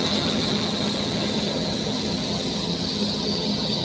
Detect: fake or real fake